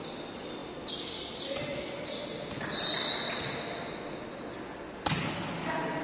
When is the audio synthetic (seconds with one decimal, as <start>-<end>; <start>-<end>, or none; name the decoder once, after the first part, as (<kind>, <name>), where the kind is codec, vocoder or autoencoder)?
none